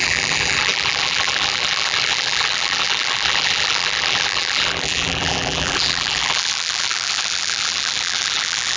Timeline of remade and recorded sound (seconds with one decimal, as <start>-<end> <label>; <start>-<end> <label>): 0.0-8.8 remade